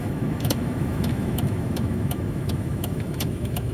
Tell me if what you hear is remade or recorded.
remade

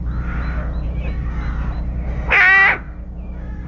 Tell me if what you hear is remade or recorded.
recorded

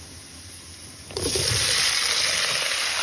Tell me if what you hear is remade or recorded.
recorded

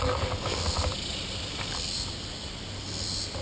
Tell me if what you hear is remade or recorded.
recorded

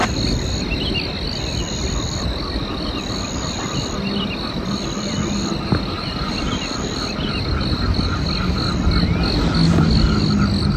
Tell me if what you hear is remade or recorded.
recorded